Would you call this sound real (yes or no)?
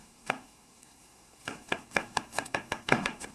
no